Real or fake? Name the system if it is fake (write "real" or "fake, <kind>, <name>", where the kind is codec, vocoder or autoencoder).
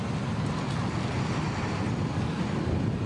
real